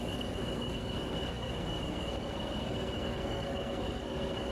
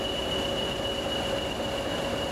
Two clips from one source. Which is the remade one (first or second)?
first